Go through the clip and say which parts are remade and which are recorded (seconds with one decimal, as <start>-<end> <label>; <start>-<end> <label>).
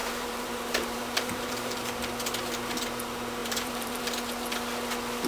0.0-2.0 remade; 2.0-3.4 recorded; 3.4-4.0 remade; 4.0-5.3 recorded